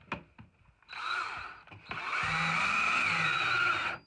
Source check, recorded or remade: recorded